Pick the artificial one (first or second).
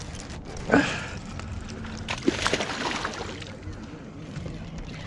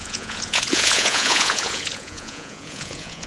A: second